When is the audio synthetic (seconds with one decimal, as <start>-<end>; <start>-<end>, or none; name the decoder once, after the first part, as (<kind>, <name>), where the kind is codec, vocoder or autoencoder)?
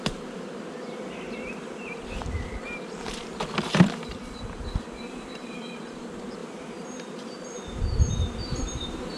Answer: 0.0-9.2 (vocoder, BigVGAN v2)